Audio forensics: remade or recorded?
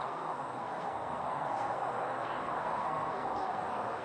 remade